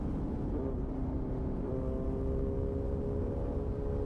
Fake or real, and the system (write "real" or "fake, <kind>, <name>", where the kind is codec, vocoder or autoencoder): real